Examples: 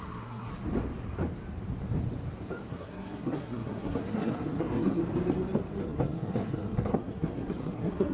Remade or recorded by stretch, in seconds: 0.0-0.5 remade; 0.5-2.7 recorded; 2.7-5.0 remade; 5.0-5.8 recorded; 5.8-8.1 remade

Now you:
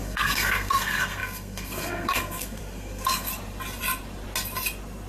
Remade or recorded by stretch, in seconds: 0.0-3.3 remade; 3.3-5.1 recorded

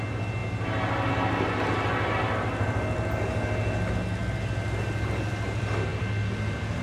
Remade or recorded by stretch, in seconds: 0.0-6.8 recorded

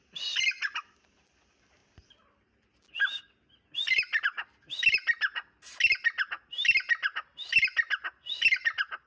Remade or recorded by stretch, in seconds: 0.0-9.1 recorded

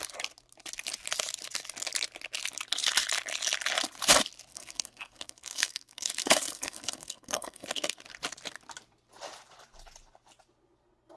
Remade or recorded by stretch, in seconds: 0.0-4.5 recorded; 4.5-8.0 remade; 8.0-11.2 recorded

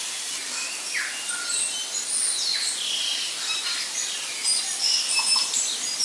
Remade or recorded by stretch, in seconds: 0.0-1.3 remade; 1.3-2.5 recorded; 2.5-6.0 remade

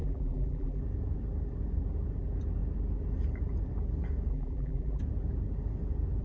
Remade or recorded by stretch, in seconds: 0.0-0.8 remade; 0.8-4.3 recorded; 4.3-5.0 remade; 5.0-6.2 recorded